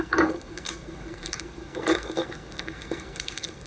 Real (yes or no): no